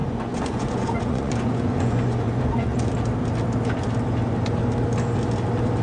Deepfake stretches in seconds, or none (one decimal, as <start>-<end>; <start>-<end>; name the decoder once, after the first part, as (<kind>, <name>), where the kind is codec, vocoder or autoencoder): 0.0-2.9 (vocoder, Vocos)